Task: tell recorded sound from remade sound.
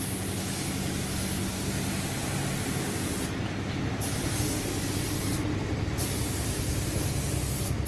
recorded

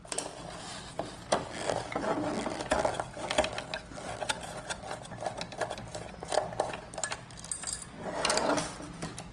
recorded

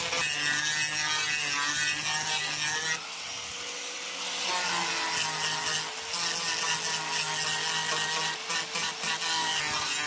recorded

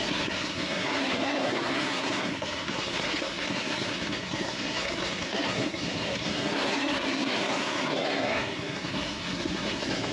remade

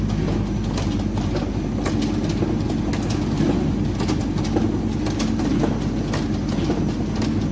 recorded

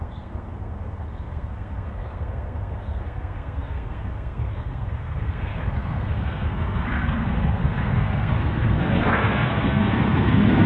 remade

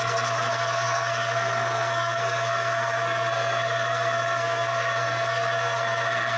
remade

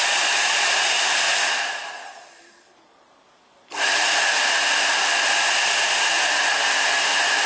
recorded